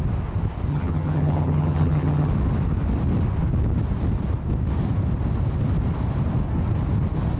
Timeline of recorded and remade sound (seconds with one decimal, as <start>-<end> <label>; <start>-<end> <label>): 0.0-0.7 recorded; 0.7-2.3 remade; 2.3-7.4 recorded